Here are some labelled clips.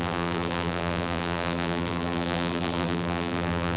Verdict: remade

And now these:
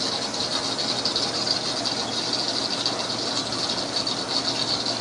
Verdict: recorded